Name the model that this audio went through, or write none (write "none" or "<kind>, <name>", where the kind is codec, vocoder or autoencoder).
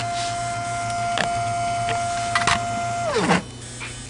none